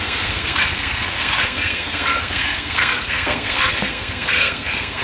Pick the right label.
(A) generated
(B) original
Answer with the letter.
A